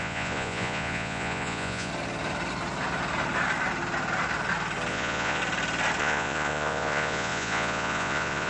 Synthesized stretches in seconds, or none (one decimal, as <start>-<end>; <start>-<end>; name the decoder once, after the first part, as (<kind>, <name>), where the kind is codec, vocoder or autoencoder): 0.0-1.9 (vocoder, Vocos); 4.9-5.4; 6.0-8.5